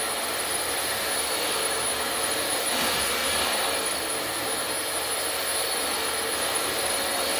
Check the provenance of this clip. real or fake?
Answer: real